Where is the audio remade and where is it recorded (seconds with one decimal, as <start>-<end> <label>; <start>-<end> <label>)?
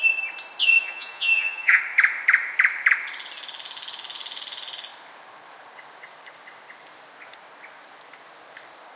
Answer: 0.0-0.6 recorded; 0.6-1.8 remade; 1.8-9.0 recorded